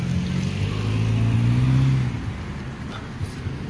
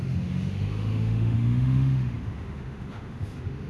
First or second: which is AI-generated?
second